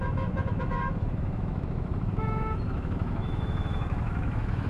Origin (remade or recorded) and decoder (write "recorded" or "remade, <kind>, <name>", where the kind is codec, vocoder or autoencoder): remade, autoencoder, DAC-VAE